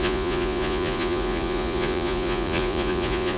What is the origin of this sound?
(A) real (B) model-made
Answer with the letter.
B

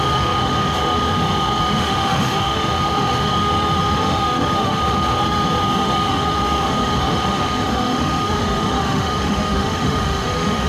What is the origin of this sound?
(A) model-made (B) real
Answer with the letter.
A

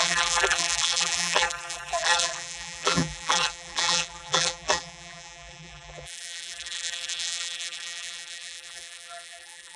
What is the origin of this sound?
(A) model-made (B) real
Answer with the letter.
A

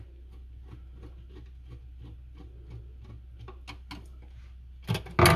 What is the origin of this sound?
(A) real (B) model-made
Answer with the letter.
A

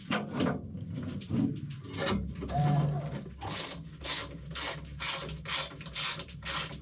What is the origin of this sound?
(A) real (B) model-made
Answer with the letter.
A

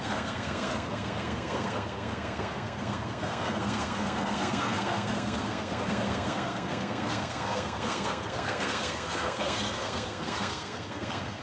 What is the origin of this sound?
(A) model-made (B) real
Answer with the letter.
A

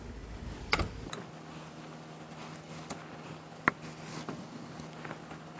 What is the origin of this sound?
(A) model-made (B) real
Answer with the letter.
B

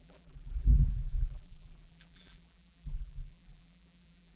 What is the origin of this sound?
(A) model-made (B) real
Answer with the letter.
A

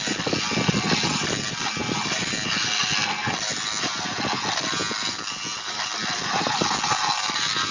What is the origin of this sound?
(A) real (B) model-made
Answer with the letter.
A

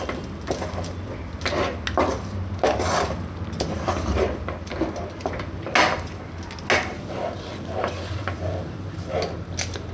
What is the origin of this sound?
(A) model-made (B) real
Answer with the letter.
B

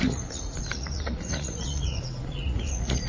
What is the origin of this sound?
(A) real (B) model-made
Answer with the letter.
B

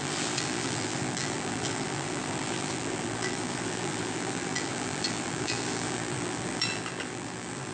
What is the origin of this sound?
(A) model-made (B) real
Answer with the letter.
A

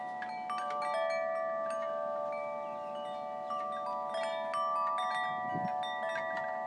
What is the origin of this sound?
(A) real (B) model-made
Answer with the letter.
A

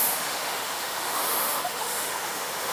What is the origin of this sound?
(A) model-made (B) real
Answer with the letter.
A